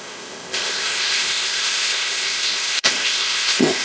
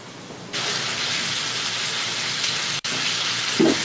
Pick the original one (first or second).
second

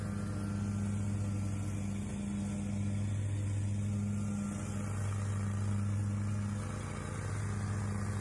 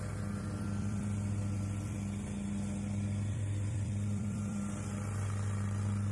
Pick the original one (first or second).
first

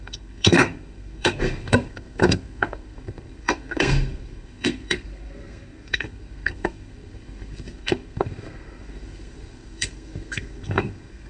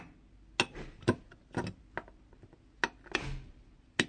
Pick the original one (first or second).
second